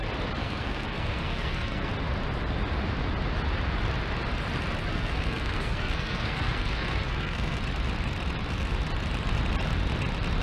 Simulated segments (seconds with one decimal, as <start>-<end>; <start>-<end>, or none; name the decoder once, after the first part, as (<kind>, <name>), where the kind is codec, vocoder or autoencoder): 0.4-1.9 (codec, SNAC); 4.9-7.6